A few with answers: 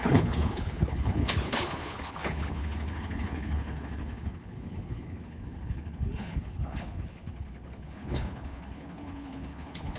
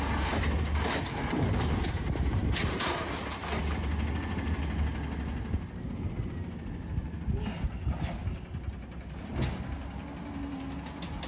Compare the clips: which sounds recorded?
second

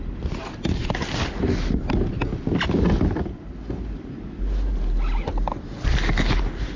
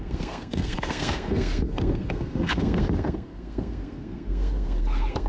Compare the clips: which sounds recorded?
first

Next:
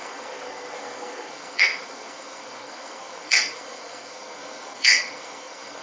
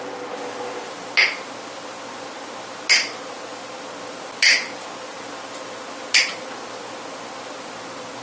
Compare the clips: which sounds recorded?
second